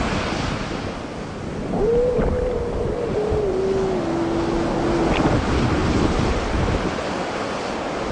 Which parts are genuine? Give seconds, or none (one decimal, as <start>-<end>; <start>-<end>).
0.0-5.8; 7.3-8.1